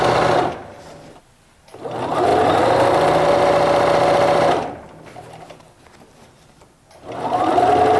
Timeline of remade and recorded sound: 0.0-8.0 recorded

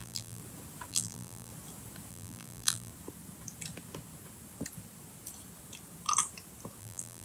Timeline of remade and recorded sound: 0.0-0.4 remade; 0.4-0.9 recorded; 0.9-1.5 remade; 1.5-2.1 recorded; 2.1-2.9 remade; 2.9-6.8 recorded; 6.8-7.2 remade

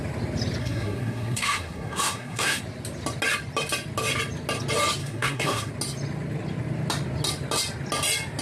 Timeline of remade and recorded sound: 0.0-0.6 recorded; 0.6-2.6 remade; 2.6-5.0 recorded; 5.0-5.7 remade; 5.7-8.4 recorded

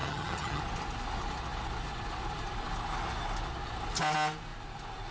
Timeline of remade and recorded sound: 0.0-0.6 remade; 0.6-5.1 recorded

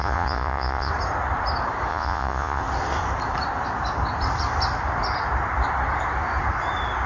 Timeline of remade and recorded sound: 0.0-0.9 remade; 0.9-1.9 recorded; 1.9-2.6 remade; 2.6-7.1 recorded